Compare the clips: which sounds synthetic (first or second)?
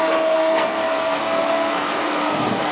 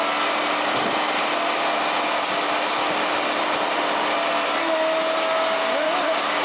first